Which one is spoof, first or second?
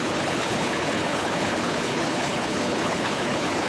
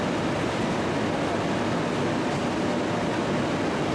first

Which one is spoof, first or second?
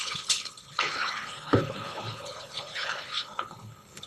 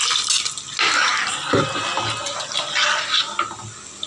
first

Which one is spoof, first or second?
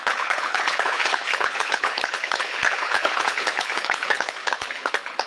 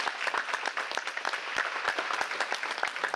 first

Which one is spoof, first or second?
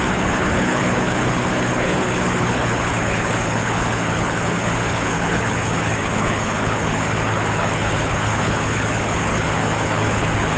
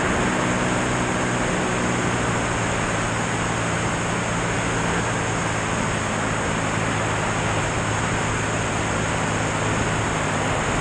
first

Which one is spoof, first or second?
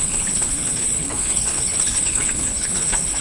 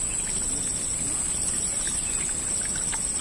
first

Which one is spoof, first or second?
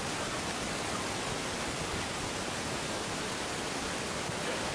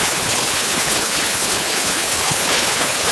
second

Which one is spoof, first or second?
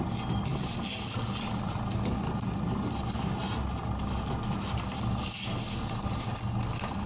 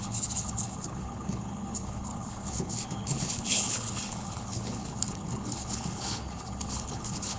second